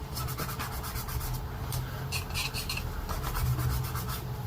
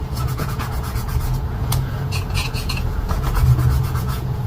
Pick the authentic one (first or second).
first